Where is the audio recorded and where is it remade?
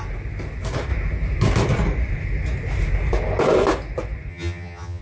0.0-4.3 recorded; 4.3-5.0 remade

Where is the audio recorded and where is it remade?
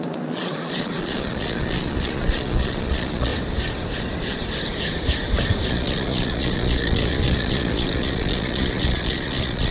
0.0-3.3 remade; 3.3-5.7 recorded; 5.7-9.7 remade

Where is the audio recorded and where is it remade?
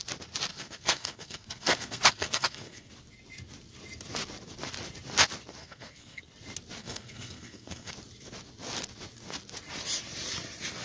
0.0-0.5 recorded; 0.5-2.9 remade; 2.9-5.6 recorded; 5.6-6.2 remade; 6.2-6.8 recorded; 6.8-7.9 remade; 7.9-10.8 recorded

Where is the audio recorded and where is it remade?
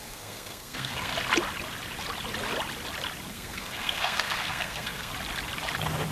0.0-1.1 remade; 1.1-3.3 recorded; 3.3-5.1 remade; 5.1-6.1 recorded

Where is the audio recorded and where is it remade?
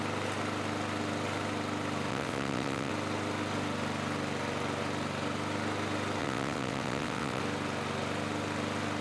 0.0-2.1 recorded; 2.1-2.9 remade; 2.9-6.2 recorded; 6.2-7.4 remade; 7.4-9.0 recorded